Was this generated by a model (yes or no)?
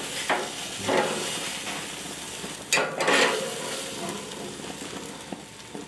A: no